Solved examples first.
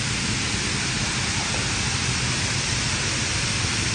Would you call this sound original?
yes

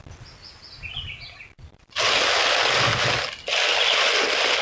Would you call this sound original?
yes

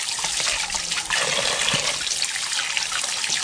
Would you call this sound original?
yes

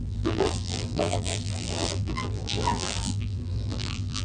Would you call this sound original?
no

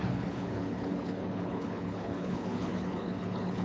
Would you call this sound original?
no